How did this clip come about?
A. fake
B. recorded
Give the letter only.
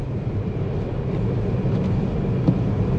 B